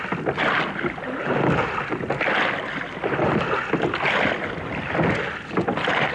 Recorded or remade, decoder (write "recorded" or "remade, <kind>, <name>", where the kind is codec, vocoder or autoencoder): recorded